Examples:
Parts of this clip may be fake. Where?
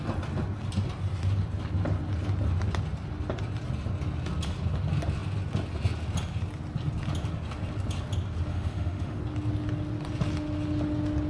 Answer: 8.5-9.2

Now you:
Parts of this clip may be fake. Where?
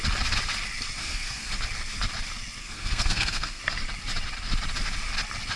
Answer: 1.0-1.5; 2.6-3.6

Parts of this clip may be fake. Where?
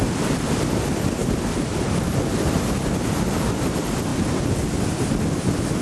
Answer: 1.2-2.2; 4.1-5.1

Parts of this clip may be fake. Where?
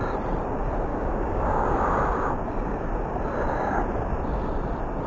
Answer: 0.9-1.8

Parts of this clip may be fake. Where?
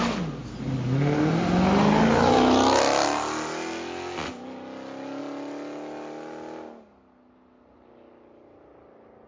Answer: none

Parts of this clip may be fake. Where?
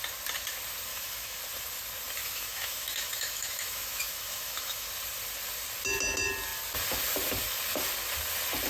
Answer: 0.9-1.4; 2.2-4.9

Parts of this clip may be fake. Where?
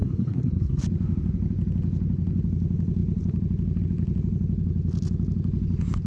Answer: 0.0-0.8